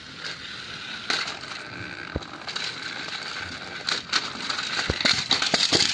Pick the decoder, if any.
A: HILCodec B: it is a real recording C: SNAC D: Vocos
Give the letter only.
B